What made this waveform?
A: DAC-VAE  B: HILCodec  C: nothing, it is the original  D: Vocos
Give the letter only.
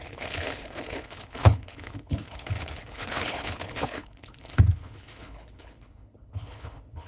B